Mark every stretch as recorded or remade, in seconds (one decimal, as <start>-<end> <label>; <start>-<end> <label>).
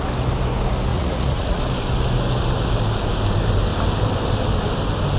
0.0-0.9 recorded; 0.9-1.6 remade; 1.6-5.2 recorded